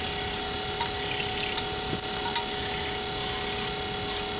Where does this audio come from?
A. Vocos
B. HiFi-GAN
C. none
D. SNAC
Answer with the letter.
C